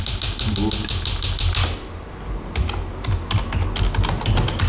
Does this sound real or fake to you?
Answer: real